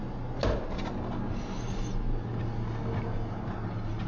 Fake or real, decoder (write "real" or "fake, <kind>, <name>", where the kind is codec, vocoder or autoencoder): real